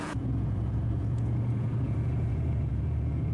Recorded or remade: remade